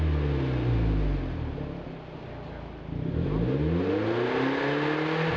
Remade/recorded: recorded